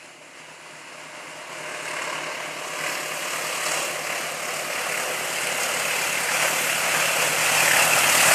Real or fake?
real